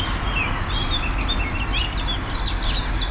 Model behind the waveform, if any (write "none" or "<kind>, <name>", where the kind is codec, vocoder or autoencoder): none